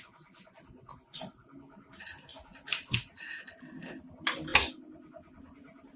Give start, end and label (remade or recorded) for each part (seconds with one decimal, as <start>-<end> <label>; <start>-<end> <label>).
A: 0.0-4.5 recorded; 4.5-6.0 remade